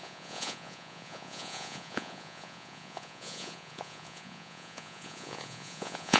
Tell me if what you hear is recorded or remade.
remade